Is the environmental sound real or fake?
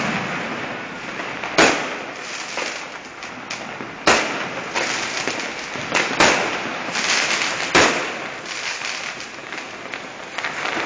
real